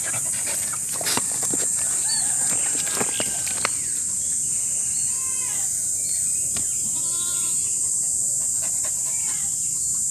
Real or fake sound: real